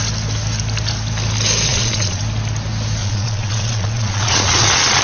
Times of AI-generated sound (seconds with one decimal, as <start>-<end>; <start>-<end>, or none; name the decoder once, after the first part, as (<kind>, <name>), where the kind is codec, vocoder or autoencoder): 1.7-2.2 (vocoder, Vocos); 3.0-5.0